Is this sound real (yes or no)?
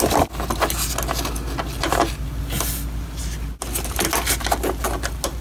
yes